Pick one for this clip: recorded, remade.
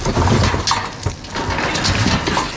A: recorded